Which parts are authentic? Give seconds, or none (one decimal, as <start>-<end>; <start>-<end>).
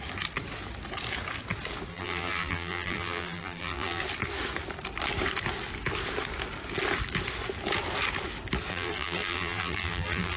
0.0-1.9; 4.0-8.7